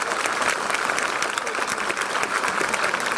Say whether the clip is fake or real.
real